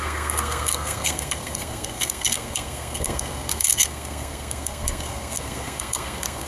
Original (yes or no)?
no